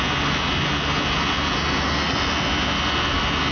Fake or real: real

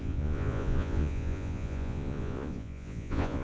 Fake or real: fake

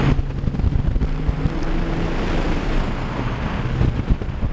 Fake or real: real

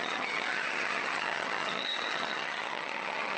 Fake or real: fake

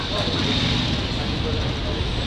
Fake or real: real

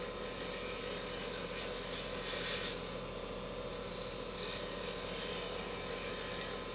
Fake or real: real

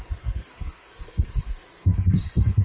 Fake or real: fake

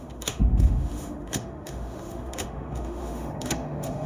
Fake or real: fake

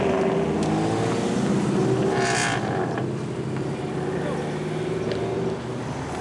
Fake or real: real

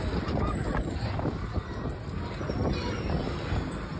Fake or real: real